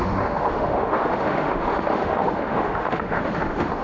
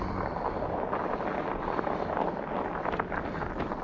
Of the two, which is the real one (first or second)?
second